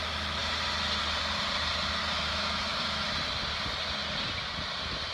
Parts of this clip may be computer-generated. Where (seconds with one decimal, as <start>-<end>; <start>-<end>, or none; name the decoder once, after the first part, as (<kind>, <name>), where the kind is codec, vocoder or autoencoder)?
2.0-3.2 (autoencoder, DAC-VAE)

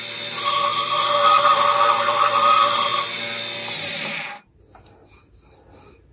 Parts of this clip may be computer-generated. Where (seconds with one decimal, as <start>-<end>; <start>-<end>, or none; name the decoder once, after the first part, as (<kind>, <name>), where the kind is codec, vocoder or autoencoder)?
0.7-2.5 (vocoder, BigVGAN v2); 2.9-4.4

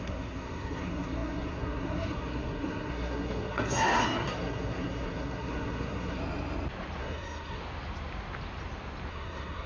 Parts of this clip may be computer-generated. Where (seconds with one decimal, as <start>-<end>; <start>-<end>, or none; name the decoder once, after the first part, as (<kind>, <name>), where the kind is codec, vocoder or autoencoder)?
0.0-6.2 (codec, SNAC); 7.0-7.6; 9.1-9.7

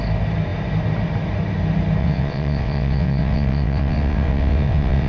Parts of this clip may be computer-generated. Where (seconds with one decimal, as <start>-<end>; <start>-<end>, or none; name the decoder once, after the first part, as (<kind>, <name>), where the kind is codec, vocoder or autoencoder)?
2.0-5.1 (vocoder, WaveNeXt)